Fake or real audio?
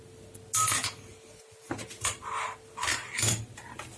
real